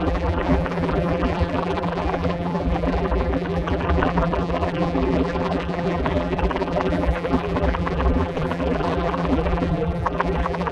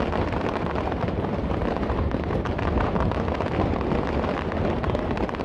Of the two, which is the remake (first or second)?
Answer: first